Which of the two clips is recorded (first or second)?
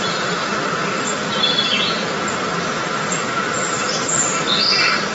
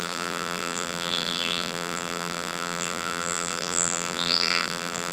first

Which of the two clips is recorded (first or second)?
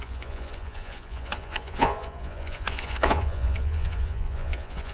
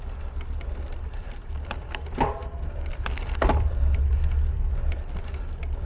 second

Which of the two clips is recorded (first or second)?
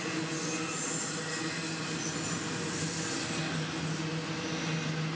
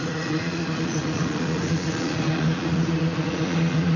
first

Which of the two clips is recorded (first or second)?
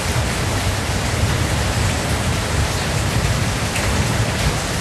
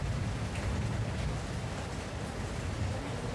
second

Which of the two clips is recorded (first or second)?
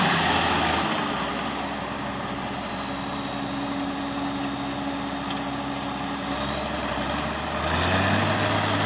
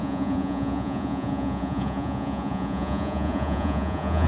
first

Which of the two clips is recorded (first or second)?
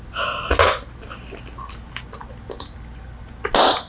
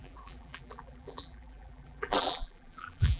first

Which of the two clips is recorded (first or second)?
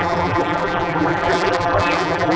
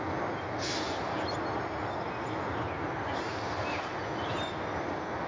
second